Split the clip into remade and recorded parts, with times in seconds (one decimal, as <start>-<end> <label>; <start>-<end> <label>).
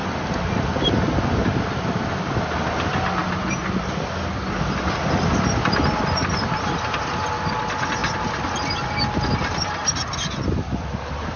0.0-11.4 recorded